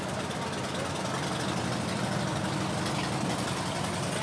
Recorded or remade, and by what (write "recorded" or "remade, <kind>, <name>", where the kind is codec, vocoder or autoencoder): recorded